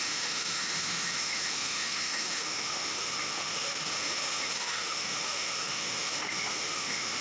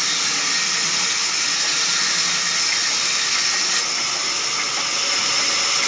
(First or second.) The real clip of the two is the second